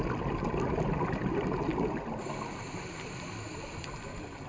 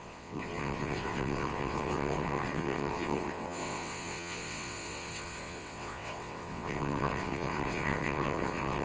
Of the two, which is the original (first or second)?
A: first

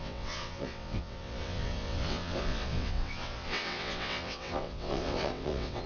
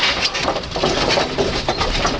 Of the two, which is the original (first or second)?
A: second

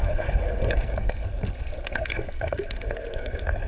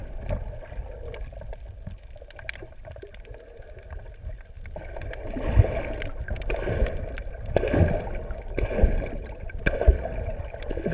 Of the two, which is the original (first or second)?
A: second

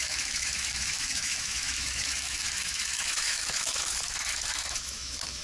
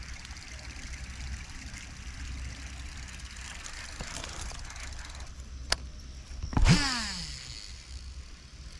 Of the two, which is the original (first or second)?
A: second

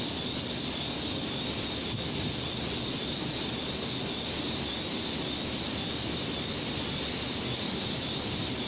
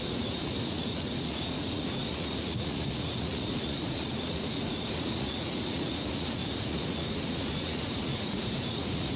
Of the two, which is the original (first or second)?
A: first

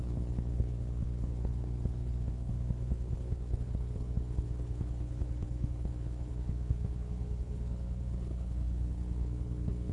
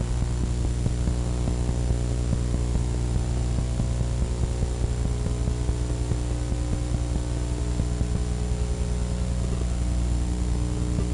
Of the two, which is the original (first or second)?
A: second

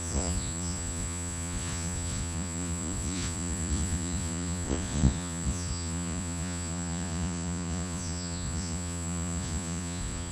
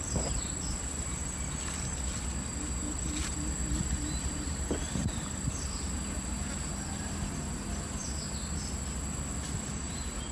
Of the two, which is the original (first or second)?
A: second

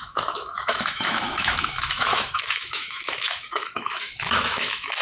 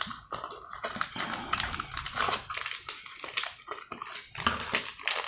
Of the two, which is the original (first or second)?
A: second